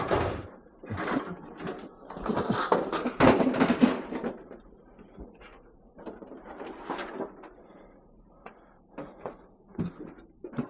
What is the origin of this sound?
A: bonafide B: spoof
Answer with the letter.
B